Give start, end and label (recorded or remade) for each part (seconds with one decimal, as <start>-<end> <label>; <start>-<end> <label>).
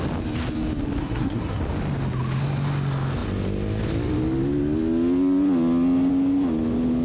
0.0-1.0 recorded; 1.0-1.6 remade; 1.6-7.0 recorded